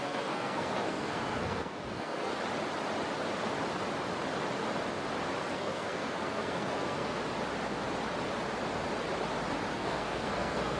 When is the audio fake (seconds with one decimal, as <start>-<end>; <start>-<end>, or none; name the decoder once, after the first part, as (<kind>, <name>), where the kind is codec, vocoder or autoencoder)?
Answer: 0.0-2.3 (codec, SNAC); 5.4-7.2; 9.7-10.8

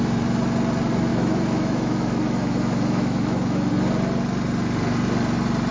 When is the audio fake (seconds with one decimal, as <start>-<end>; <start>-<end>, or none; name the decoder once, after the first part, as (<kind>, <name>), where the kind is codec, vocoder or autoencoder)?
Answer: 1.1-3.7 (autoencoder, DAC-VAE)

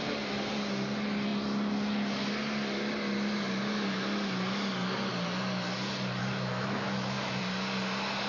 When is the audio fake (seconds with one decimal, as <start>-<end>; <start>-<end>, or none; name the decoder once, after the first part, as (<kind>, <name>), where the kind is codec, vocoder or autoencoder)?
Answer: 6.2-7.4 (autoencoder, DAC-VAE)

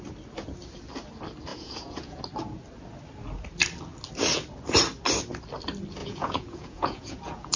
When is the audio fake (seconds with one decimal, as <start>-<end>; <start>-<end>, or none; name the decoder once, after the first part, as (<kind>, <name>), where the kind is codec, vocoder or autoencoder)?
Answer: 1.5-2.2 (vocoder, Vocos); 6.0-7.6

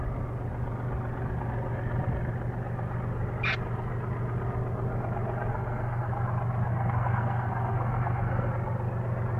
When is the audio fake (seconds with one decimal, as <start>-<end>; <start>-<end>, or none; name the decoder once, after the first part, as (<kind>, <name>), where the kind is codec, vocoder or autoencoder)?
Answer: 5.5-6.1 (codec, SNAC); 6.7-8.5

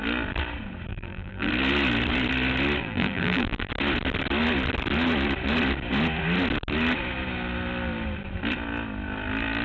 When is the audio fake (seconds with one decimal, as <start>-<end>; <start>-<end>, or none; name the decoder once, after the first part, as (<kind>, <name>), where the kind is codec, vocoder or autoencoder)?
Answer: 0.9-1.5 (vocoder, BigVGAN v2); 2.8-3.7

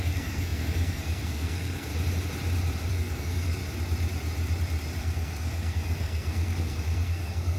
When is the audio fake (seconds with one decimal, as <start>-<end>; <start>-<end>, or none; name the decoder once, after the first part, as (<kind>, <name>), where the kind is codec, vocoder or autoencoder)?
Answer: 0.0-1.9 (codec, SNAC); 2.9-3.6; 5.0-7.6